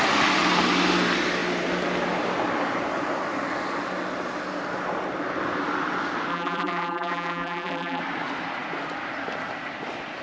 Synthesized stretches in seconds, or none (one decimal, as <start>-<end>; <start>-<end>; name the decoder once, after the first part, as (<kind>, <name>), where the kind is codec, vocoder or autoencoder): 6.3-8.0 (vocoder, BigVGAN v2)